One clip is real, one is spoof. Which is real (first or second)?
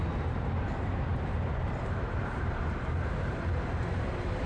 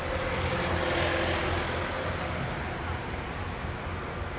second